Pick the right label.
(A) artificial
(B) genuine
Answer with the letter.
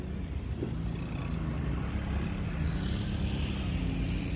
B